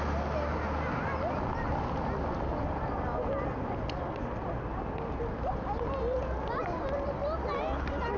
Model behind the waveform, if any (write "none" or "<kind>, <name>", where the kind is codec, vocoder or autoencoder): none